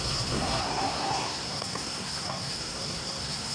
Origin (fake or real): fake